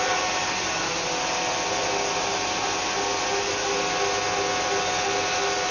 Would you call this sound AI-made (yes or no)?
no